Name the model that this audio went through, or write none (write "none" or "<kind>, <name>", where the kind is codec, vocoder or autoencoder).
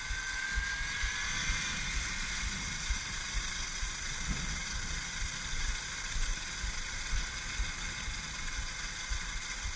none